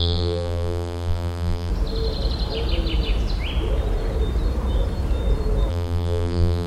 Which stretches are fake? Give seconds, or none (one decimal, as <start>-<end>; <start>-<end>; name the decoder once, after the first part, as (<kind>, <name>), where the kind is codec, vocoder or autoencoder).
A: 0.0-1.7 (vocoder, BigVGAN v2); 5.7-6.7